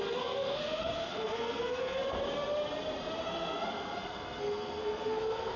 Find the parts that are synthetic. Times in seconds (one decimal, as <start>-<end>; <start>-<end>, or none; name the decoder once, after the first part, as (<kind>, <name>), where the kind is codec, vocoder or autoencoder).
0.0-2.0 (codec, SNAC); 3.2-5.6